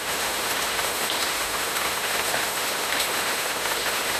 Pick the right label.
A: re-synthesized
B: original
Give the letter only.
A